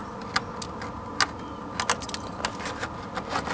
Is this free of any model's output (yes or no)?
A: yes